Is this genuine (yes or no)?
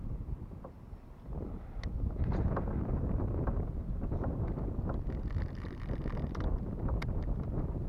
yes